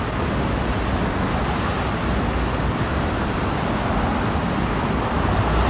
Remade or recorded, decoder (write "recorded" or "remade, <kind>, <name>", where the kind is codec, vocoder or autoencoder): recorded